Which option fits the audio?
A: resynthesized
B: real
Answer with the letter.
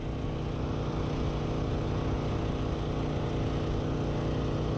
B